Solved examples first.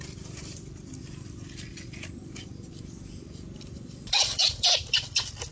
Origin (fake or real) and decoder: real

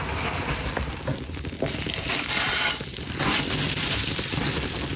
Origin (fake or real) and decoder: real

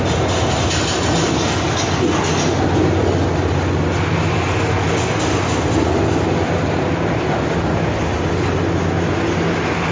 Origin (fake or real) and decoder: real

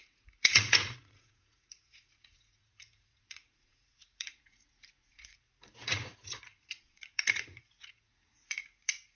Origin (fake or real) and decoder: fake, vocoder, Vocos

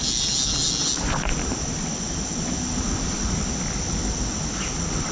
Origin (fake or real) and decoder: real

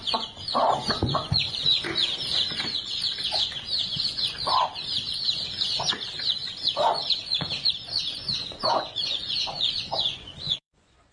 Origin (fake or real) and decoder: fake, vocoder, Vocos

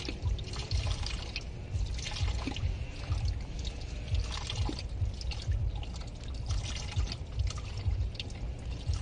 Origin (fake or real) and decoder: real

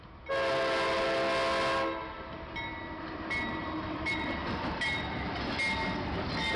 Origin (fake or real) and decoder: real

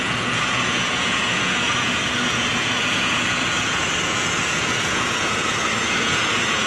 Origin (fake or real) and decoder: fake, vocoder, Vocos